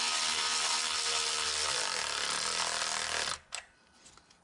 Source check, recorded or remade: recorded